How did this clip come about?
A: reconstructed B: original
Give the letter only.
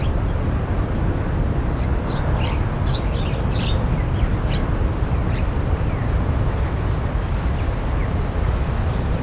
B